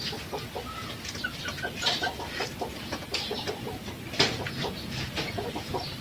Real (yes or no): yes